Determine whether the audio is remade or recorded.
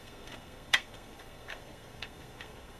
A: remade